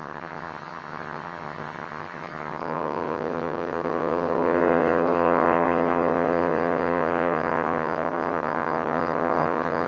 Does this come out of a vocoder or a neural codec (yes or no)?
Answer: yes